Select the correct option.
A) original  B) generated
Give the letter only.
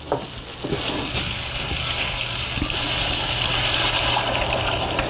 A